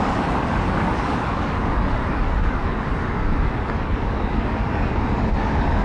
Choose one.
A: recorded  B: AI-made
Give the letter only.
B